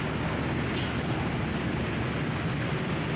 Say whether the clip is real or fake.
real